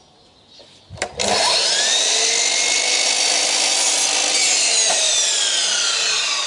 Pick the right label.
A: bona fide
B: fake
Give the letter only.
A